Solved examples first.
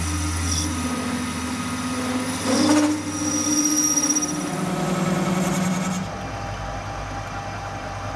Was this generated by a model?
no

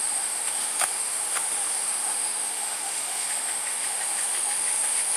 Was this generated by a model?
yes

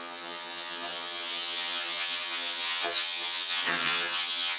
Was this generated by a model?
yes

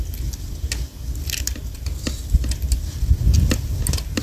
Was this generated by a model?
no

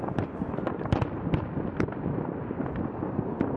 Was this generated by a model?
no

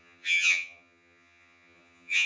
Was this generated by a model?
yes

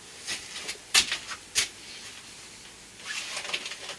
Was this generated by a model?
no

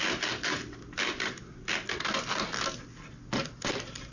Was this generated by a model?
no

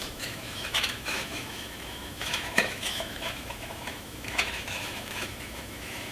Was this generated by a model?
yes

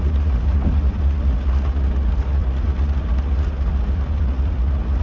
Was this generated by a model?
yes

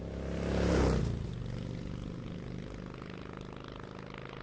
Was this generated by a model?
no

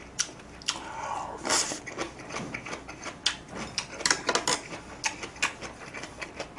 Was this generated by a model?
no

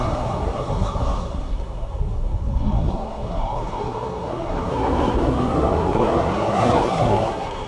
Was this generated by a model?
yes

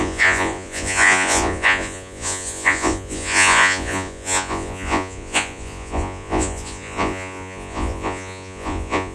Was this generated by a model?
yes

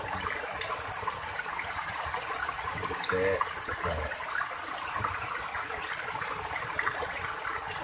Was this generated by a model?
no